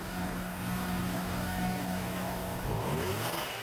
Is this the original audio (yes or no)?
no